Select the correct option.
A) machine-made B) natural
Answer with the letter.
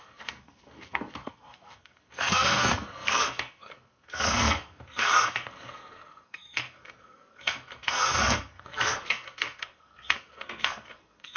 A